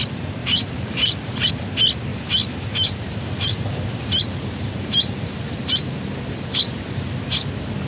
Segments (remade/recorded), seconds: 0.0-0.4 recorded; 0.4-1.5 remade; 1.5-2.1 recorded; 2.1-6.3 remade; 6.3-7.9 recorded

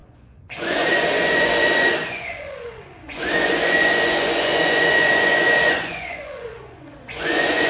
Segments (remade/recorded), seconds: 0.0-7.7 remade

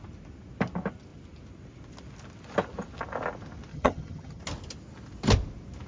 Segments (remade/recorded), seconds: 0.0-3.7 recorded; 3.7-4.4 remade; 4.4-5.9 recorded

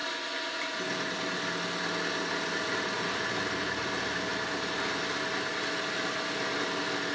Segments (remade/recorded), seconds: 0.0-7.1 recorded